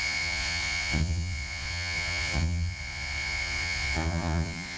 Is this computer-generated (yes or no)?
yes